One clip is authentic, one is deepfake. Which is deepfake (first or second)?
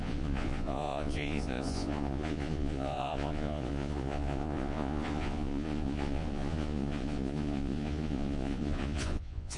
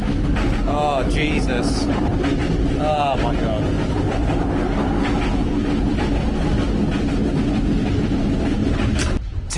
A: first